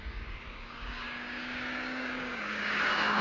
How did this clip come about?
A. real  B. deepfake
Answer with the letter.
B